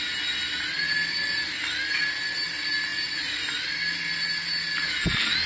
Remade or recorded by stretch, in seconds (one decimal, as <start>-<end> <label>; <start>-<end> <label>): 0.0-5.5 recorded